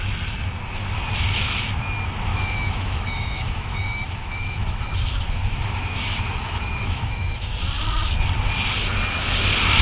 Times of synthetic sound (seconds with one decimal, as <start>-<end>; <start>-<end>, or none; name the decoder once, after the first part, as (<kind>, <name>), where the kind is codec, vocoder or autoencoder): 2.3-7.6 (autoencoder, DAC-VAE)